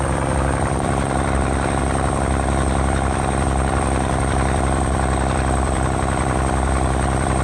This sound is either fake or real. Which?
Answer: fake